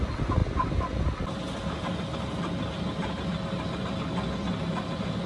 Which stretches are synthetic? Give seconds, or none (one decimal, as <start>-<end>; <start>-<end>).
none